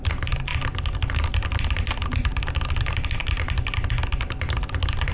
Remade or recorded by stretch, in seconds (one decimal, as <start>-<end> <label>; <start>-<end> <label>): 0.0-5.1 recorded

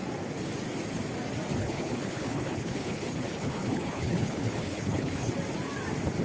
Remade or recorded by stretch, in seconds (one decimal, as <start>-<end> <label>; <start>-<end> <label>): 0.0-1.6 recorded; 1.6-5.3 remade; 5.3-6.2 recorded